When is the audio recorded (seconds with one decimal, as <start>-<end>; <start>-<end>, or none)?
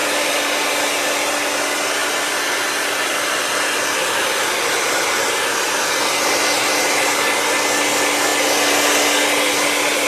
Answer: 0.7-10.1